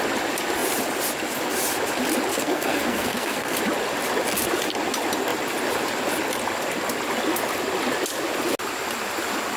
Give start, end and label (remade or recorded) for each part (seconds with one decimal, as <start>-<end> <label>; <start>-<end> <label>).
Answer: 0.0-2.3 recorded; 2.3-3.6 remade; 3.6-9.6 recorded